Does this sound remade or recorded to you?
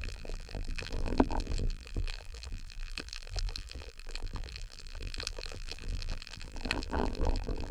remade